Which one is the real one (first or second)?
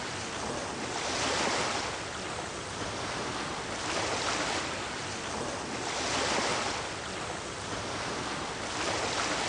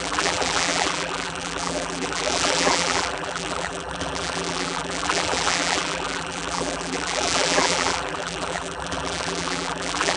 first